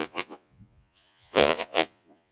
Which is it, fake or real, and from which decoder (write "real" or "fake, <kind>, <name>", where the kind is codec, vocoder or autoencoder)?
fake, vocoder, Vocos